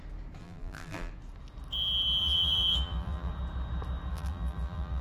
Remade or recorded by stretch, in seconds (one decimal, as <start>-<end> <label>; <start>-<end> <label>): 0.0-0.4 recorded; 0.4-1.1 remade; 1.1-2.2 recorded; 2.2-3.3 remade; 3.3-4.1 recorded; 4.1-5.0 remade

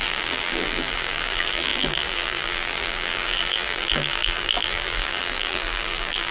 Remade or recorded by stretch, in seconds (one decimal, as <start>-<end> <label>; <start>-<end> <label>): 0.0-6.3 remade

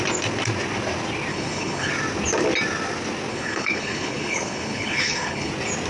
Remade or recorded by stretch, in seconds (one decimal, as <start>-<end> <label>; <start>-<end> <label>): 0.0-1.3 recorded; 1.3-1.9 remade; 1.9-3.3 recorded; 3.3-5.5 remade; 5.5-5.9 recorded

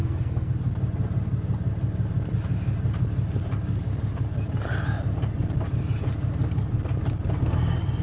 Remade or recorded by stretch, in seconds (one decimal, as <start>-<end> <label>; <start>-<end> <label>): 0.0-0.5 remade; 0.5-8.0 recorded